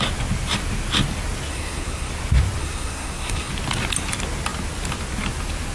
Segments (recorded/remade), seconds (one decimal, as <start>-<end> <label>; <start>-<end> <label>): 0.0-1.5 recorded; 1.5-2.1 remade; 2.1-2.6 recorded; 2.6-3.5 remade; 3.5-5.7 recorded